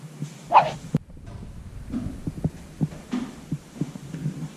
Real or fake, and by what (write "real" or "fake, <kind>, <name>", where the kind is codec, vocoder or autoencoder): fake, vocoder, BigVGAN v2